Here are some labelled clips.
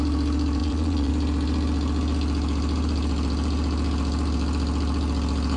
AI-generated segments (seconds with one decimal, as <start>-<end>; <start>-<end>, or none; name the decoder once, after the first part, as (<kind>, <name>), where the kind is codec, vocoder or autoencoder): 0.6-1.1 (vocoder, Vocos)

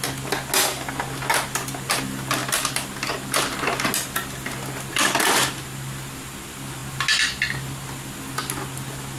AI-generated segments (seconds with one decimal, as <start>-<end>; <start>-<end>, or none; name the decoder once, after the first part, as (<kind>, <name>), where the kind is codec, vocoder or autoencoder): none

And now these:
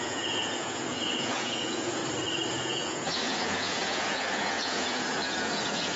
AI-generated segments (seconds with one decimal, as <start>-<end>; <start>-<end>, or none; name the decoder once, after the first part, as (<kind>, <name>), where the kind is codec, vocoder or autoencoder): 0.0-2.0 (vocoder, Vocos); 2.5-6.0

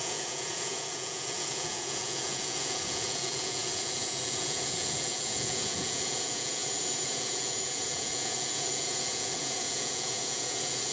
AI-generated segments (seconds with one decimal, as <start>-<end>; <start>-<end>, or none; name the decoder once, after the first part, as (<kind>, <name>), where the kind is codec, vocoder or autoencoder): 0.0-10.9 (vocoder, Vocos)

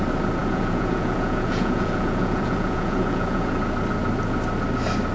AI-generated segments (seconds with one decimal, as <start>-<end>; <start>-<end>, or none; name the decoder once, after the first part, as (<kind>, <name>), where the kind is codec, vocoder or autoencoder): 0.4-3.5 (vocoder, Vocos)

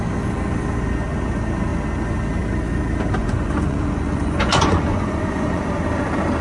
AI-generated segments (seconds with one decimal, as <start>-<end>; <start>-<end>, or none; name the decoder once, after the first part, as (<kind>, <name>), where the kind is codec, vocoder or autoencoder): 3.2-5.6 (vocoder, Vocos)

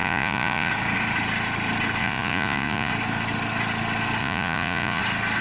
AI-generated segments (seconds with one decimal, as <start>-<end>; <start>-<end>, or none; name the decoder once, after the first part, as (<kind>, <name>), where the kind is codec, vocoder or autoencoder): 0.0-0.7 (vocoder, Vocos); 2.0-2.9; 4.2-5.0

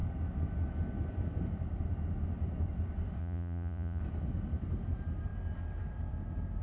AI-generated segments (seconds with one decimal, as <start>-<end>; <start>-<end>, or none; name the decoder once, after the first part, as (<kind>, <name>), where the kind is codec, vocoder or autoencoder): 3.2-4.0 (vocoder, Vocos)